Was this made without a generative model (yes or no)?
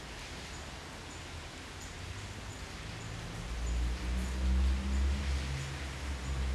yes